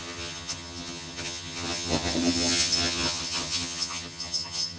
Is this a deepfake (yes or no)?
yes